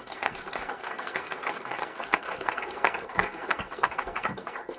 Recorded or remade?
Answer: remade